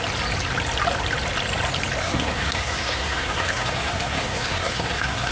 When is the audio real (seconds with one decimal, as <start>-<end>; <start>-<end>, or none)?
0.0-2.0